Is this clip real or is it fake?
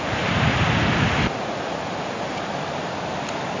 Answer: real